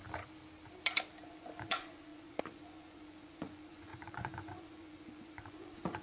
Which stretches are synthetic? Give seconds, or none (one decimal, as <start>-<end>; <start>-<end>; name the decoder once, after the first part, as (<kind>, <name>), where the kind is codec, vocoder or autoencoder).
1.2-6.0 (vocoder, Vocos)